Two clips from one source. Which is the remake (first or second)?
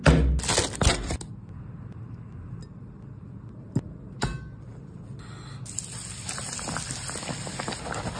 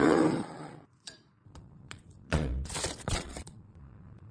second